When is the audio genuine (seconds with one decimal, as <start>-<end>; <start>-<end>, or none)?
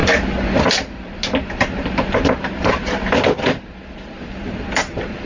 0.0-0.6; 1.2-2.4